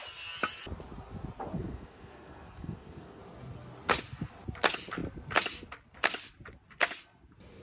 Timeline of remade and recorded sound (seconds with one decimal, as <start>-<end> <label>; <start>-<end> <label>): 0.0-1.5 recorded; 1.5-3.2 remade; 3.2-7.6 recorded